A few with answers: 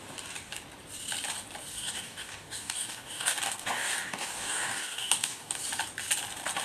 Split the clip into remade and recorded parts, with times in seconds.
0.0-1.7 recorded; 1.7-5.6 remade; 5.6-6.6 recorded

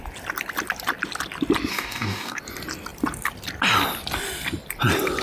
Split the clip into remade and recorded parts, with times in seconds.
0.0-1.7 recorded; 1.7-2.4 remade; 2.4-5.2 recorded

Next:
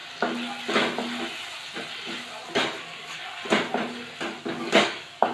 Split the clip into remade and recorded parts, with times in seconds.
0.0-2.8 recorded; 2.8-3.4 remade; 3.4-4.4 recorded; 4.4-5.3 remade

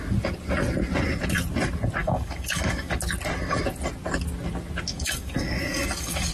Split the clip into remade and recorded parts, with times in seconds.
0.0-2.0 recorded; 2.0-3.0 remade; 3.0-4.9 recorded; 4.9-6.3 remade